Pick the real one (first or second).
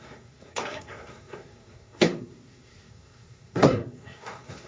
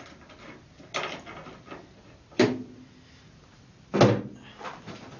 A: second